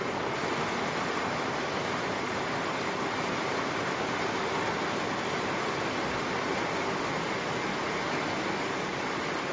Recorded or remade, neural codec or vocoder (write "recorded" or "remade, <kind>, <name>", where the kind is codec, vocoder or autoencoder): recorded